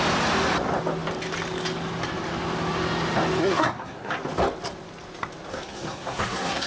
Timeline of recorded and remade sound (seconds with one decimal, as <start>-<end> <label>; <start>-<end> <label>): 0.0-3.4 recorded; 3.4-4.1 remade; 4.1-5.5 recorded; 5.5-6.7 remade